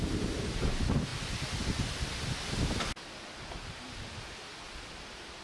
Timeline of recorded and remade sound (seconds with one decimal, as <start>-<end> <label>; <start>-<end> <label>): 0.0-5.4 recorded

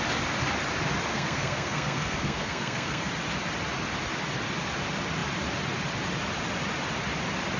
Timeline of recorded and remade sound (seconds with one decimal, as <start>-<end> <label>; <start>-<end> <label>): 0.0-1.1 recorded; 1.1-3.1 remade; 3.1-7.6 recorded

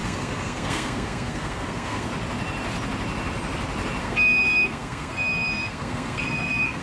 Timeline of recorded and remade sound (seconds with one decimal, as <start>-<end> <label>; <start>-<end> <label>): 0.0-2.1 remade; 2.1-4.0 recorded; 4.0-6.8 remade